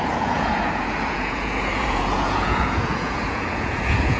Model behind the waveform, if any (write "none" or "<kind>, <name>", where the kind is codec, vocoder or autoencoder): vocoder, Vocos